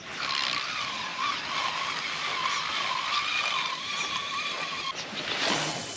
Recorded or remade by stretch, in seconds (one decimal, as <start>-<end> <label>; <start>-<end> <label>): 0.0-6.0 recorded